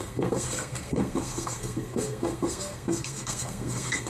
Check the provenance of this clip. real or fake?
fake